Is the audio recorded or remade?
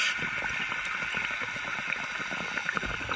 recorded